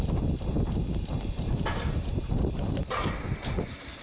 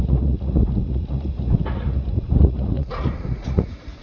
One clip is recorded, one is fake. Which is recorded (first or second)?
first